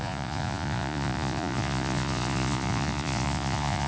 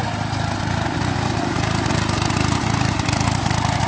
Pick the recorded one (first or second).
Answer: second